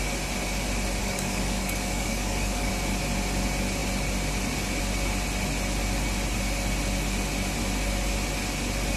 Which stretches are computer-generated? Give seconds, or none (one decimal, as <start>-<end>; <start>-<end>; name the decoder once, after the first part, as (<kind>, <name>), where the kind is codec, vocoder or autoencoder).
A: 1.0-2.7 (codec, DAC)